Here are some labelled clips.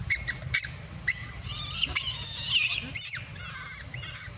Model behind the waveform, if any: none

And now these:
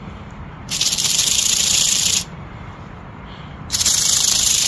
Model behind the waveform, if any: vocoder, BigVGAN v2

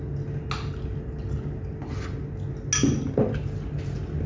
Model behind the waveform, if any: none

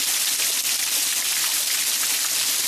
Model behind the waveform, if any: none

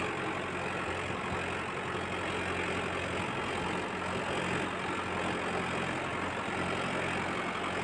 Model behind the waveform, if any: none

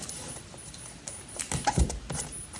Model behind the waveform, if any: none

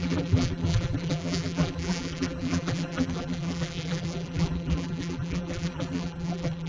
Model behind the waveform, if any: vocoder, BigVGAN v2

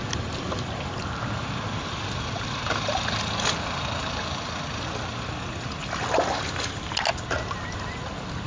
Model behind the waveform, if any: none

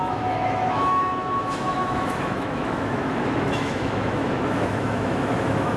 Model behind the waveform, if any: autoencoder, DAC-VAE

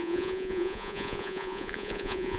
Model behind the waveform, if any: vocoder, Vocos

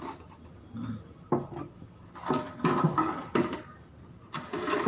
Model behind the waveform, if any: none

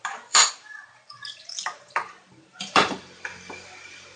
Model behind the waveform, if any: vocoder, BigVGAN v2